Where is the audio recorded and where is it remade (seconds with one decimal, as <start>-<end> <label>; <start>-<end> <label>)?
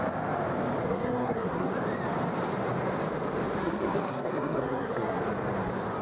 0.0-0.8 recorded; 0.8-1.7 remade; 1.7-3.6 recorded; 3.6-5.2 remade; 5.2-6.0 recorded